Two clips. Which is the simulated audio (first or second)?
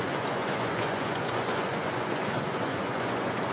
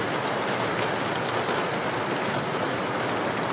first